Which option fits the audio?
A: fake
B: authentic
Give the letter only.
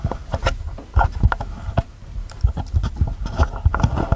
B